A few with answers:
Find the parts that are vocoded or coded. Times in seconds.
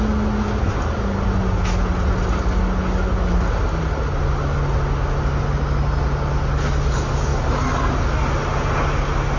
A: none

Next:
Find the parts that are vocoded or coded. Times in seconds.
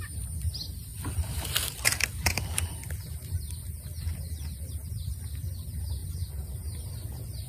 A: 0.9-4.9 (vocoder, BigVGAN v2)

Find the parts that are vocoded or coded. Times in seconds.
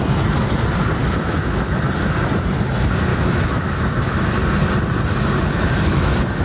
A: 1.0-1.7 (autoencoder, DAC-VAE); 3.1-4.3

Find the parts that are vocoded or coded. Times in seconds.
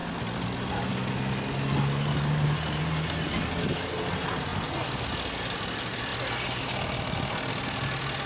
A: none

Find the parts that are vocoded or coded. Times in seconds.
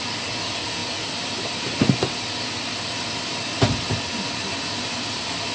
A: none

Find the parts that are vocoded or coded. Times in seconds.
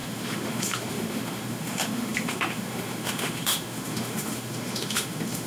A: 0.0-5.5 (autoencoder, DAC-VAE)